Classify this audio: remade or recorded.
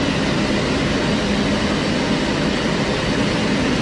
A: recorded